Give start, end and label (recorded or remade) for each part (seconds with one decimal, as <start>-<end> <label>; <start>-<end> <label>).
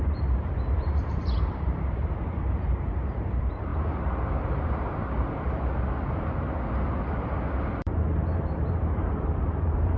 0.0-3.7 remade; 3.7-7.6 recorded; 7.6-10.0 remade